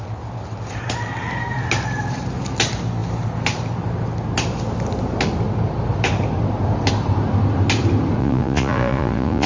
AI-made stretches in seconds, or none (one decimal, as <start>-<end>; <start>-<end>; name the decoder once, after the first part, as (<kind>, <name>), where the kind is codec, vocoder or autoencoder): 8.2-9.5 (vocoder, Vocos)